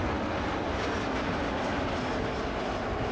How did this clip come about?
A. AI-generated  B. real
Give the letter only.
B